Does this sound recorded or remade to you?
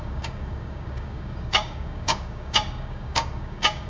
remade